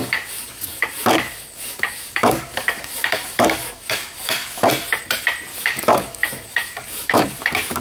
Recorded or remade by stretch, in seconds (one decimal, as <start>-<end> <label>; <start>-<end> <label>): 0.0-4.7 remade; 4.7-5.5 recorded; 5.5-7.8 remade